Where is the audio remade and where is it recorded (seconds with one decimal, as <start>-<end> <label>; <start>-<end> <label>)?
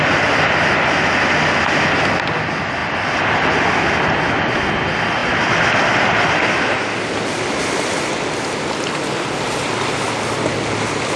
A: 0.0-11.2 recorded